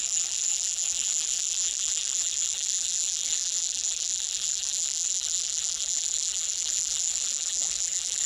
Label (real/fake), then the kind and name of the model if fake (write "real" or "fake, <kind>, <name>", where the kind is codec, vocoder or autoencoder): fake, vocoder, BigVGAN v2